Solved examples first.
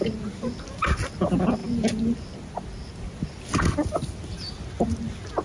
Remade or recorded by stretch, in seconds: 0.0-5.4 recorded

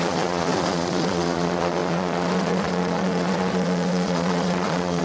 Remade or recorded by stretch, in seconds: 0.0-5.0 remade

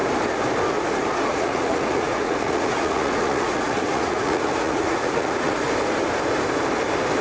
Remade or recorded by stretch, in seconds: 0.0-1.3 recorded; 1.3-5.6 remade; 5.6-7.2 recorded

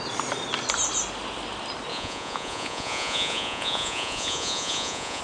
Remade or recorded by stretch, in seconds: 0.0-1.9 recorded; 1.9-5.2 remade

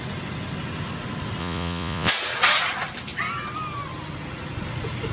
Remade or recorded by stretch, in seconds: 0.0-1.4 recorded; 1.4-2.1 remade; 2.1-5.1 recorded

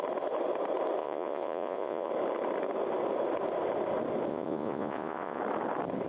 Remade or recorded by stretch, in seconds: 0.0-1.0 recorded; 1.0-2.1 remade; 2.1-4.3 recorded; 4.3-5.4 remade; 5.4-6.1 recorded